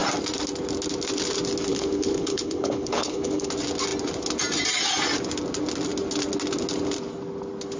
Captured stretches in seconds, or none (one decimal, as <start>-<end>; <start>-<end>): 0.0-1.7; 3.5-7.8